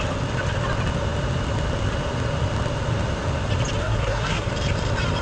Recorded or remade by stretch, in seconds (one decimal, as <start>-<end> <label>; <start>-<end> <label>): 0.0-3.8 recorded; 3.8-4.5 remade; 4.5-5.2 recorded